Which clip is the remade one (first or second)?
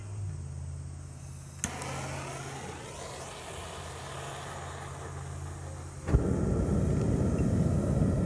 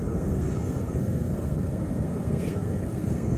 second